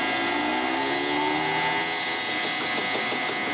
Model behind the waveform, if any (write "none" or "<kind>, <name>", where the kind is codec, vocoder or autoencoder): none